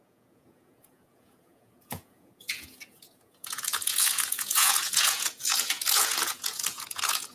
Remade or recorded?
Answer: remade